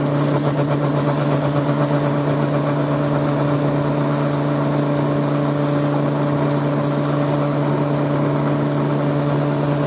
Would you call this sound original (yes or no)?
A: yes